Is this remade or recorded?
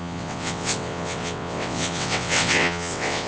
remade